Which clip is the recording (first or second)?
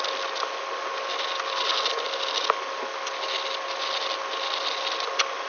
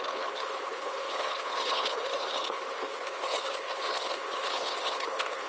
first